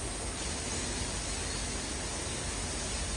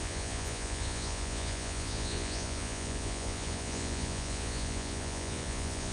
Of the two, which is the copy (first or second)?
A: second